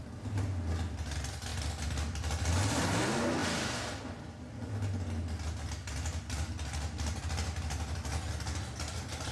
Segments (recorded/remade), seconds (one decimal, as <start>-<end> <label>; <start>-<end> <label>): 0.0-9.3 recorded